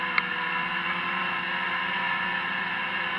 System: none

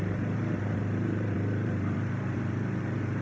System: vocoder, BigVGAN v2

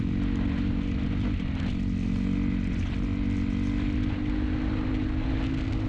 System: none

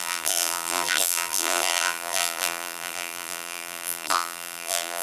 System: vocoder, BigVGAN v2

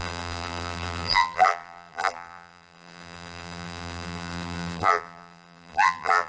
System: vocoder, BigVGAN v2